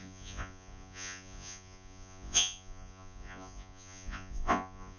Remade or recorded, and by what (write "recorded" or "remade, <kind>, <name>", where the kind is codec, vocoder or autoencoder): remade, vocoder, Vocos